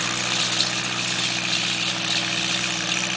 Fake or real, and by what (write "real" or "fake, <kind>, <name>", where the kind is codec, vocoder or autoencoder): real